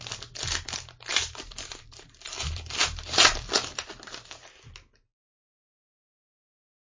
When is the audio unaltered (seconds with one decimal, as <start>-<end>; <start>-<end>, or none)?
0.0-1.1; 3.5-6.8